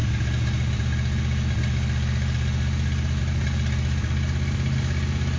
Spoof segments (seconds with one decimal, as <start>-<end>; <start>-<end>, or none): none